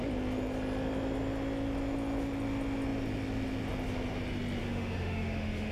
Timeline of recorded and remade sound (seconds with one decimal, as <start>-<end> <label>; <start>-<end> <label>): 0.0-4.6 recorded; 4.6-5.7 remade